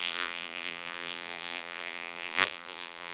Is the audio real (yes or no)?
no